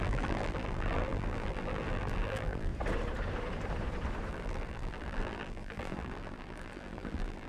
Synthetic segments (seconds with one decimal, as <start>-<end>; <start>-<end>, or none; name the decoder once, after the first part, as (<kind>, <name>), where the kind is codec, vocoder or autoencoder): 0.0-2.7 (vocoder, BigVGAN v2); 4.3-7.5